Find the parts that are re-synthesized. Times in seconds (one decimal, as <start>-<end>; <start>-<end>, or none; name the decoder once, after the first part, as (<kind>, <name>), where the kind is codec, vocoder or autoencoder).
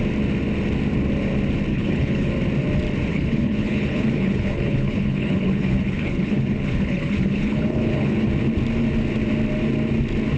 1.7-2.3 (codec, HILCodec); 3.1-8.3